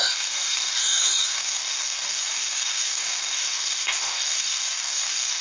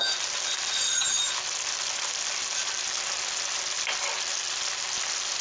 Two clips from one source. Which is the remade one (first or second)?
first